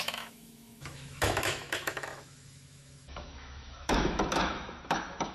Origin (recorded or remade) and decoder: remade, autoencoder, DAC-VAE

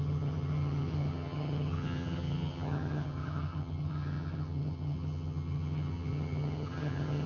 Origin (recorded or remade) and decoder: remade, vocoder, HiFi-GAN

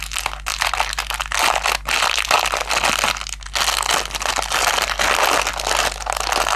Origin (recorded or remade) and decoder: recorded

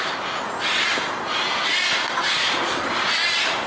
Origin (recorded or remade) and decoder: recorded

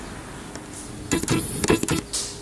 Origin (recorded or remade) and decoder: recorded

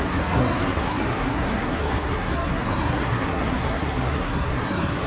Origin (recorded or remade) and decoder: remade, codec, SNAC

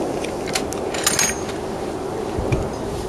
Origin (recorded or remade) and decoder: recorded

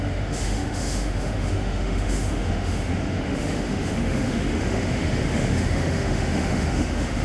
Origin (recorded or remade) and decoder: remade, autoencoder, DAC-VAE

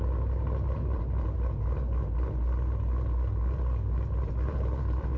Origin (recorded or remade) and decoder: recorded